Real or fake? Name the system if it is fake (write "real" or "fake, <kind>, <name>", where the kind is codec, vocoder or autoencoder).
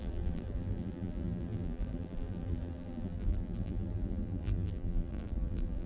fake, vocoder, BigVGAN v2